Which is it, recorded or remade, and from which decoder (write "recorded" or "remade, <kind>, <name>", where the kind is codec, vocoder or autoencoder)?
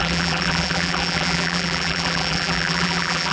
remade, vocoder, BigVGAN v2